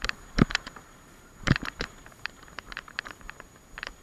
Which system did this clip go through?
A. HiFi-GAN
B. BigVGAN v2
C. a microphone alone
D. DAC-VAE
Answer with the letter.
B